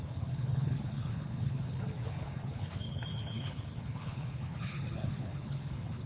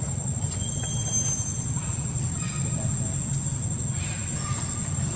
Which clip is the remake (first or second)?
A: first